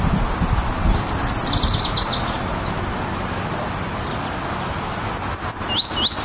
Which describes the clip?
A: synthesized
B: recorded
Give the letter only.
B